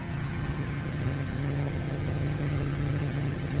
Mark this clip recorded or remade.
remade